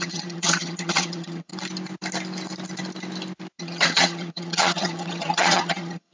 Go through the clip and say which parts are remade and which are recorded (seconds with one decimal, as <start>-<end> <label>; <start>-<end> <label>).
0.0-1.5 remade; 1.5-3.6 recorded; 3.6-6.1 remade